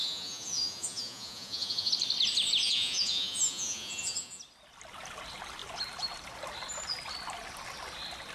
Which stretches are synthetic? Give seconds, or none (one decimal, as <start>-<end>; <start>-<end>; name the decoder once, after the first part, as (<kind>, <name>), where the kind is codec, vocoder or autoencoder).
0.0-1.9 (vocoder, Vocos); 2.6-4.4